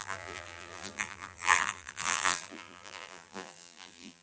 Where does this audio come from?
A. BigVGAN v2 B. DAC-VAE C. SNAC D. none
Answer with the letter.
A